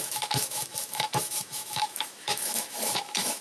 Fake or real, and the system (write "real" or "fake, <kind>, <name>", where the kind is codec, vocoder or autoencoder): fake, autoencoder, DAC-VAE